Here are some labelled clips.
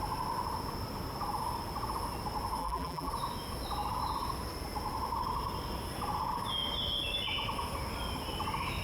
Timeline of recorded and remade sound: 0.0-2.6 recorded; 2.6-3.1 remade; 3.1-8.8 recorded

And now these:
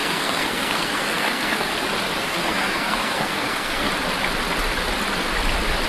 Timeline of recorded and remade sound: 0.0-1.7 remade; 1.7-2.2 recorded; 2.2-3.9 remade; 3.9-5.9 recorded

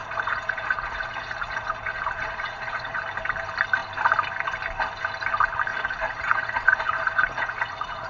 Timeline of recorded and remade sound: 0.0-3.0 remade; 3.0-5.7 recorded; 5.7-8.1 remade

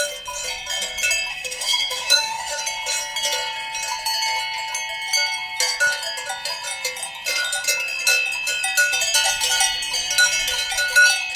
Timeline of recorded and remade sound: 0.0-1.3 recorded; 1.3-2.6 remade; 2.6-11.4 recorded

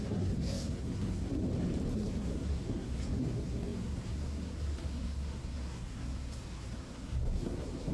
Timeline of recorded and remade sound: 0.0-1.4 remade; 1.4-1.9 recorded; 1.9-7.9 remade

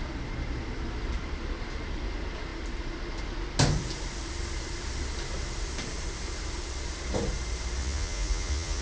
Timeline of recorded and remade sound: 0.0-7.8 recorded; 7.8-8.8 remade

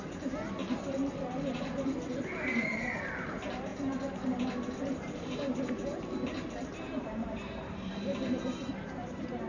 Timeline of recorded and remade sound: 0.0-3.7 remade; 3.7-4.9 recorded; 4.9-5.9 remade; 5.9-7.0 recorded; 7.0-9.5 remade